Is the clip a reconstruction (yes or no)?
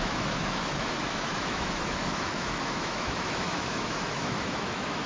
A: yes